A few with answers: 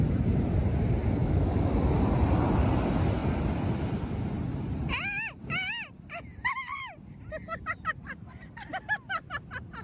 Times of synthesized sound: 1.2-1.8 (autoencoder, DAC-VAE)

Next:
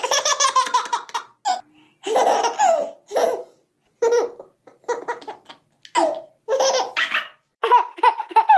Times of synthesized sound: none

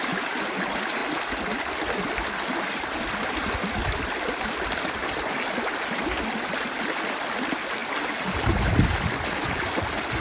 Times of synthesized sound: 1.0-6.0 (vocoder, BigVGAN v2); 8.9-9.6

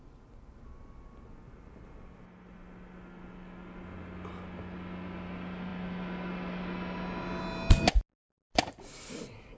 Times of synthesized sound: none